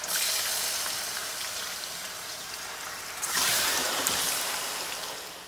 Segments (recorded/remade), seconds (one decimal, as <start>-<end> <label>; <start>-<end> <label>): 0.0-1.2 recorded; 1.2-4.5 remade; 4.5-5.5 recorded